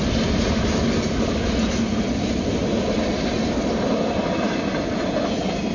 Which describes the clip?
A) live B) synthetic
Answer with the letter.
A